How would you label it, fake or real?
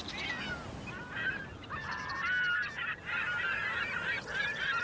real